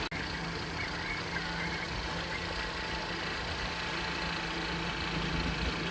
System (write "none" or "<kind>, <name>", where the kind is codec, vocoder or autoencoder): none